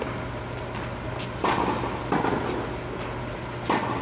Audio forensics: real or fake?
real